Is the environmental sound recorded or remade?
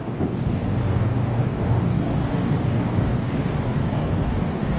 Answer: remade